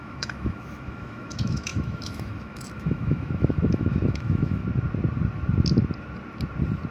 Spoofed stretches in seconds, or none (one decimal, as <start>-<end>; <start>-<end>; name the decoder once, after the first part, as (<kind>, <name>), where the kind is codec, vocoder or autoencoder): 0.0-4.6 (autoencoder, DAC-VAE)